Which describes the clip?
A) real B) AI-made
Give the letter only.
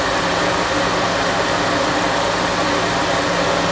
A